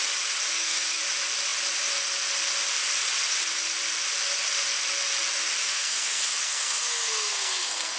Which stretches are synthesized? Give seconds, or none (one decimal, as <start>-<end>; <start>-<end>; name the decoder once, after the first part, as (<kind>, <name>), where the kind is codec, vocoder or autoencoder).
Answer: 0.5-1.0 (codec, SNAC); 5.6-8.0